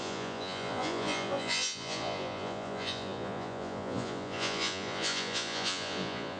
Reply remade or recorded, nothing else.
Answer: remade